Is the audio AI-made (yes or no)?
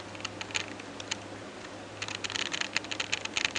no